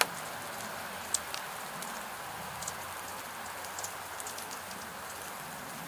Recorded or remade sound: recorded